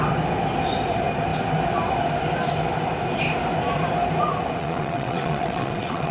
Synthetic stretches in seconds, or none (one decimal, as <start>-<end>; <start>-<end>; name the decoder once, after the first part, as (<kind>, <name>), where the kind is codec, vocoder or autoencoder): 4.6-6.1 (vocoder, WaveNeXt)